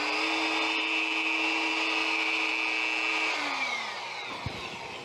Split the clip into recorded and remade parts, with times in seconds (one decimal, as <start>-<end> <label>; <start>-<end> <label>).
0.0-2.5 remade; 2.5-3.1 recorded; 3.1-5.0 remade